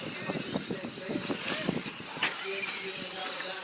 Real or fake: real